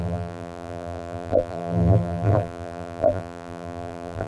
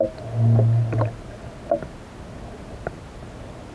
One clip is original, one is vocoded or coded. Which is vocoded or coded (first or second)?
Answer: first